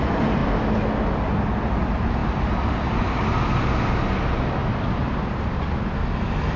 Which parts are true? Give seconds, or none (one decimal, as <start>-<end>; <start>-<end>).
0.0-6.6